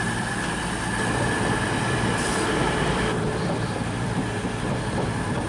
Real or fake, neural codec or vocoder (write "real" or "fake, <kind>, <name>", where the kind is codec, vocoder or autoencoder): fake, vocoder, BigVGAN v2